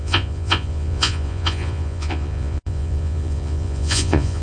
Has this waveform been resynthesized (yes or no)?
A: yes